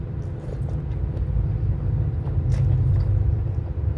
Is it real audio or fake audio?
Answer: fake